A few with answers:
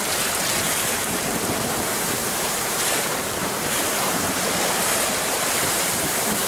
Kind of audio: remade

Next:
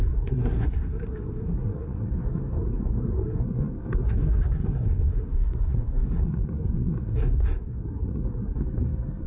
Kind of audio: remade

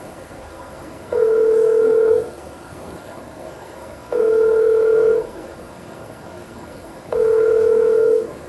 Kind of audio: remade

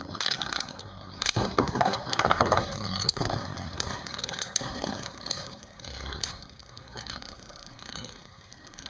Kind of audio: remade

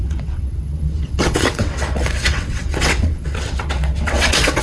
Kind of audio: remade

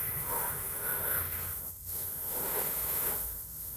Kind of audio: remade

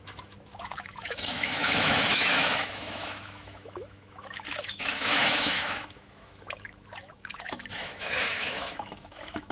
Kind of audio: remade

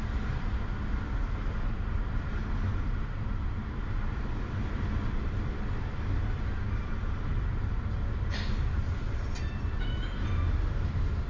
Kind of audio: recorded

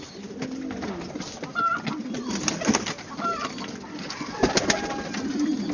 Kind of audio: recorded